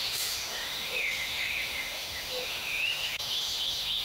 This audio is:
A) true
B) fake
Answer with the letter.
B